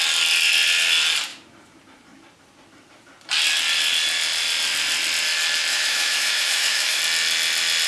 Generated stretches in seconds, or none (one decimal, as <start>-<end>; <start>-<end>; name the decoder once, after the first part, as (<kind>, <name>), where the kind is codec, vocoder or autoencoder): 5.7-7.0 (autoencoder, DAC-VAE)

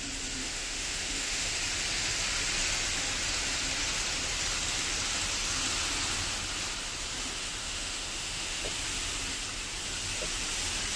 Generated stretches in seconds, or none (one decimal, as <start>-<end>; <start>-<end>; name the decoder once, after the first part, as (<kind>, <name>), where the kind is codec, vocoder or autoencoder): 0.4-1.5 (autoencoder, DAC-VAE); 7.6-8.6

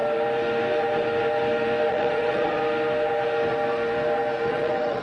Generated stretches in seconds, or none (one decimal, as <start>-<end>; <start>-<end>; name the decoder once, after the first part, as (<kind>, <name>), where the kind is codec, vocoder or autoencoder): 1.9-2.6 (vocoder, WaveNeXt); 4.5-5.0

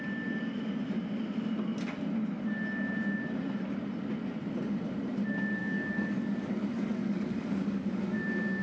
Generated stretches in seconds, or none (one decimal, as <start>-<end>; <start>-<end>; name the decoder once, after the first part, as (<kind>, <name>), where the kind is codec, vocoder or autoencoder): 5.6-8.2 (codec, DAC)

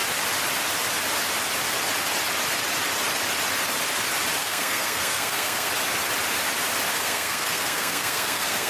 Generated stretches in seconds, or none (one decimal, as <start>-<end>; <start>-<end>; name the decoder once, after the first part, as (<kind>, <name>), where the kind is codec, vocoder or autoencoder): 4.4-5.7 (codec, SNAC); 6.9-8.7

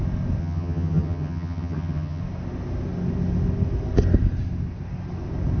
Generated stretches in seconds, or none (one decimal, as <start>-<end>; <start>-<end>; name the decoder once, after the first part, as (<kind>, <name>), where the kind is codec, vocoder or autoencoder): 0.4-2.2 (vocoder, HiFi-GAN)

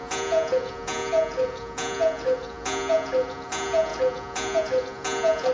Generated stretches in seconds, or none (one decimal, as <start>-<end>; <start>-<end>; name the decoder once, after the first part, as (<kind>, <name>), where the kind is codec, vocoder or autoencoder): none